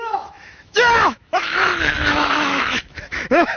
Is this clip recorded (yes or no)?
no